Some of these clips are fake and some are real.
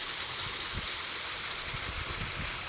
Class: real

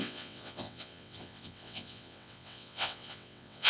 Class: fake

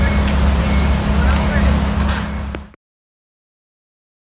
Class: real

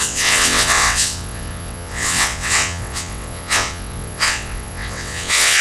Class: fake